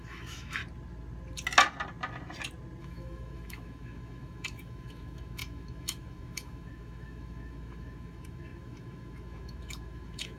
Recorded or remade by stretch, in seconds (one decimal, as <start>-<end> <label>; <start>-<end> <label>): 0.0-0.6 remade; 0.6-2.8 recorded; 2.8-10.4 remade